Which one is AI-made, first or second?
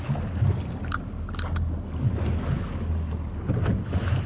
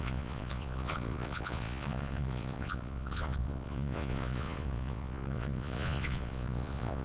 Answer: second